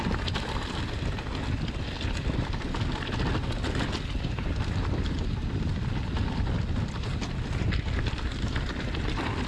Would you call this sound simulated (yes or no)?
no